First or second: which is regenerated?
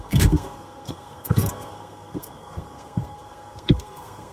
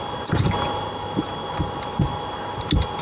first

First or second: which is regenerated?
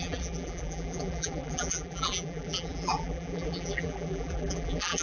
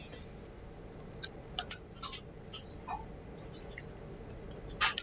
first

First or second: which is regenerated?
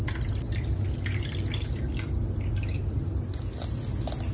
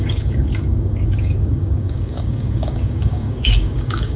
second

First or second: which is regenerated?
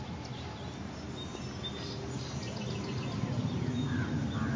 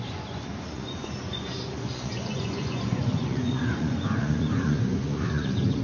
second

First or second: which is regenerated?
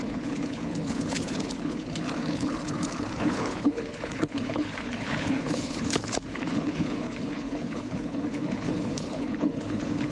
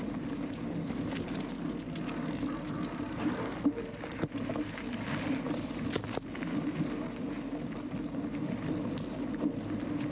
first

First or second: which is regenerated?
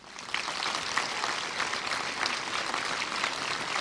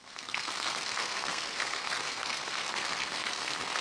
second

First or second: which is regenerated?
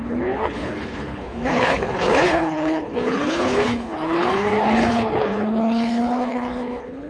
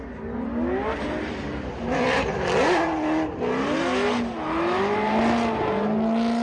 first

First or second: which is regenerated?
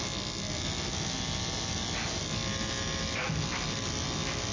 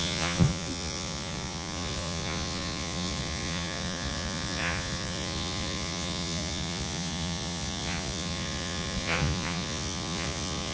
second